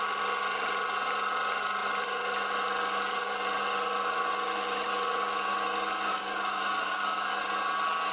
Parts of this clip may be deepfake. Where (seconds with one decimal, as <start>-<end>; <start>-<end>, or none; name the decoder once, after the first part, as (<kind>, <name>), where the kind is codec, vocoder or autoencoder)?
6.1-7.4 (codec, DAC)